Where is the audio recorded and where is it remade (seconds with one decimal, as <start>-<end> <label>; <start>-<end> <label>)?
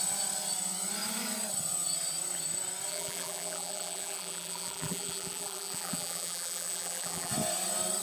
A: 0.0-2.9 recorded; 2.9-7.3 remade; 7.3-8.0 recorded